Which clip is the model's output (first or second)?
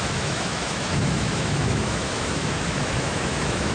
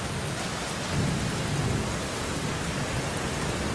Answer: first